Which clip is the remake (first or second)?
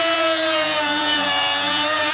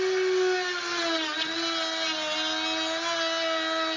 first